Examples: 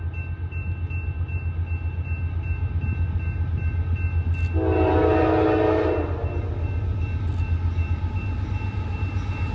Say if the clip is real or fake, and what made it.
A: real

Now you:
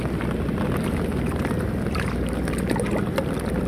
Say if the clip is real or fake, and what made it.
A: real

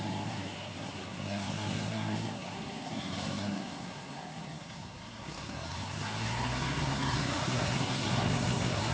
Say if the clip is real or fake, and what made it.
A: fake, codec, SNAC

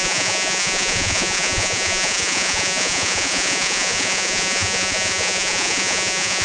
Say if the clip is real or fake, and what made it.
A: fake, vocoder, Vocos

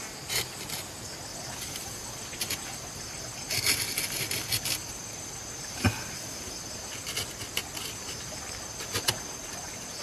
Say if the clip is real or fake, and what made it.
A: real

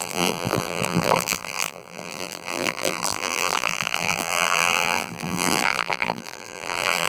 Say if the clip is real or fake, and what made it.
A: fake, vocoder, BigVGAN v2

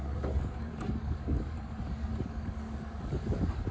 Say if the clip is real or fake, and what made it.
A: fake, codec, DAC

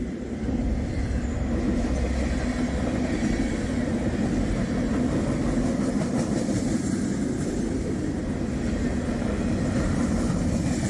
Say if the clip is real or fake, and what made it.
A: real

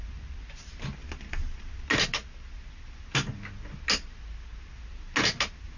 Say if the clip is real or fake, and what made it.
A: real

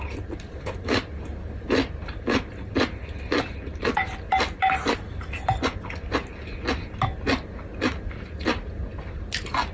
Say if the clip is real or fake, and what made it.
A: real